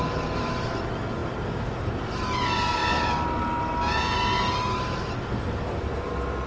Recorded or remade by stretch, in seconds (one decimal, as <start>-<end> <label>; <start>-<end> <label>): 0.0-6.5 recorded